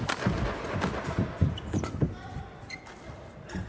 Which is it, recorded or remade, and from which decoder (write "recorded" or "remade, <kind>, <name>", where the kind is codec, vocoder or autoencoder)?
recorded